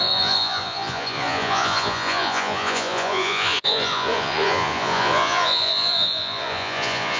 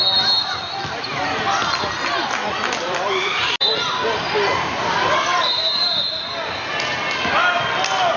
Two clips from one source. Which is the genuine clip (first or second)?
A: second